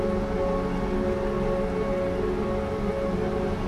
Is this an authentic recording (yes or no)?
yes